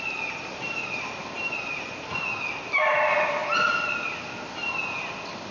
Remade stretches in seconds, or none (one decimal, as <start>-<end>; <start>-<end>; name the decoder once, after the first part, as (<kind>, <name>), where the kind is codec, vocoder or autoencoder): none